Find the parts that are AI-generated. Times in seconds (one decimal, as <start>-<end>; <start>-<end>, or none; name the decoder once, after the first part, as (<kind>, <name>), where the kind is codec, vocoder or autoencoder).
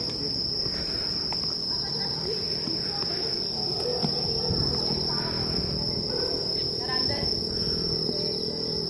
none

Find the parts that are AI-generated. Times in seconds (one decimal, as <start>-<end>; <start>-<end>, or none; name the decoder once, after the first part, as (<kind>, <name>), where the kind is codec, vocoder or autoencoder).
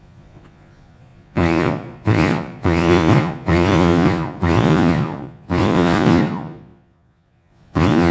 0.0-8.1 (vocoder, Vocos)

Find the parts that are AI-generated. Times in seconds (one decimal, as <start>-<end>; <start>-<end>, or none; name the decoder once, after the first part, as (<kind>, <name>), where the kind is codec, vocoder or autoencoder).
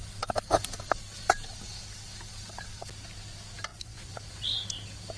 3.7-4.4 (vocoder, Vocos)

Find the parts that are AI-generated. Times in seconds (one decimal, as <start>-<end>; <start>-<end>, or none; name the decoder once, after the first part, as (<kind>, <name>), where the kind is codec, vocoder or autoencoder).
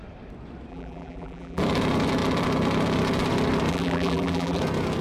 0.7-1.6 (vocoder, BigVGAN v2); 3.7-4.6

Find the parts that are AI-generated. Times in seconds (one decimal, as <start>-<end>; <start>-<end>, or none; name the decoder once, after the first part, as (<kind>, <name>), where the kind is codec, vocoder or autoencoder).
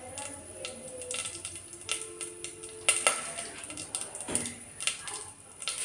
none